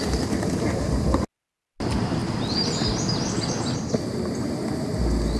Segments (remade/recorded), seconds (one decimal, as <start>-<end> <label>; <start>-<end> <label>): 0.0-5.4 recorded